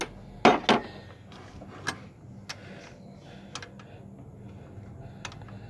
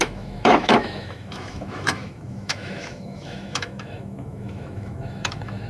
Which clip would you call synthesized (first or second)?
second